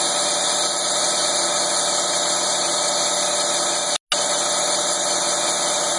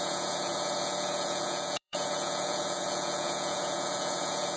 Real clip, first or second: first